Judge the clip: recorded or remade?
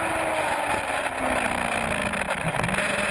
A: recorded